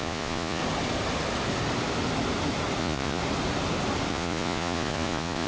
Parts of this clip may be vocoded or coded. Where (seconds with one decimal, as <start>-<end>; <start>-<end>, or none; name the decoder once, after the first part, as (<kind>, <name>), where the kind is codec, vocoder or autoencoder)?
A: 0.0-0.6 (vocoder, Vocos); 2.8-3.2; 4.1-5.5